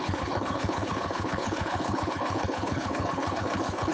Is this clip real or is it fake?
fake